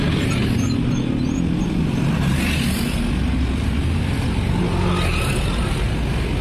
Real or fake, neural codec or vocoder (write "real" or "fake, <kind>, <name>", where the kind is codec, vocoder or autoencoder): real